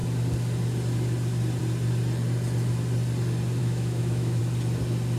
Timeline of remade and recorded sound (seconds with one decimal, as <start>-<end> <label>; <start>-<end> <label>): 0.0-3.6 recorded; 3.6-4.4 remade; 4.4-5.2 recorded